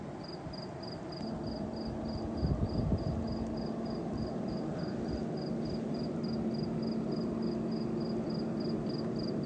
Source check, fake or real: real